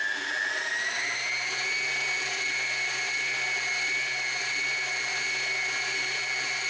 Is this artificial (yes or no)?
no